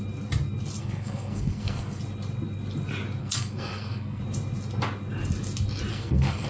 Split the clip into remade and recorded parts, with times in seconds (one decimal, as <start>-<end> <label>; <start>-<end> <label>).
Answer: 0.0-0.8 recorded; 0.8-2.0 remade; 2.0-3.2 recorded; 3.2-4.2 remade; 4.2-5.9 recorded; 5.9-6.5 remade